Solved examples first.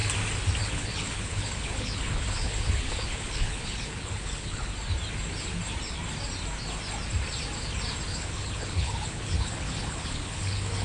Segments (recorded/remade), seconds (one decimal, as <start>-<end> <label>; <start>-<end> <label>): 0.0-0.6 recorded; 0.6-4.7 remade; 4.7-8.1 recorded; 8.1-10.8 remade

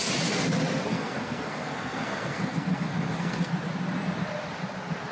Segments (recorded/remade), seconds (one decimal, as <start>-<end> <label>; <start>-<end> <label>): 0.0-0.9 recorded; 0.9-3.5 remade; 3.5-5.1 recorded

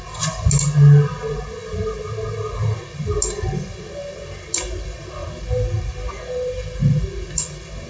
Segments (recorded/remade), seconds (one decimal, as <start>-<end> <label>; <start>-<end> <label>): 0.0-7.9 recorded

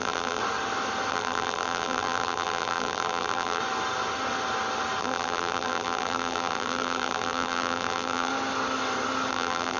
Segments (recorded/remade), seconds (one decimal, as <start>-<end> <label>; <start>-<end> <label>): 0.0-0.4 remade; 0.4-1.1 recorded; 1.1-3.6 remade; 3.6-5.0 recorded; 5.0-8.3 remade; 8.3-9.3 recorded; 9.3-9.8 remade

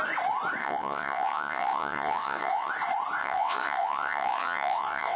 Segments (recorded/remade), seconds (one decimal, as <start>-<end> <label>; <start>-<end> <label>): 0.0-0.6 recorded; 0.6-2.7 remade; 2.7-3.2 recorded; 3.2-5.2 remade

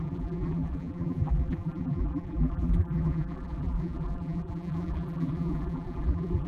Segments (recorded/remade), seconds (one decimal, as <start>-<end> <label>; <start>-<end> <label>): 0.0-6.5 remade